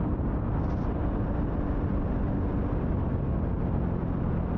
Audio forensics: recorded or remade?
recorded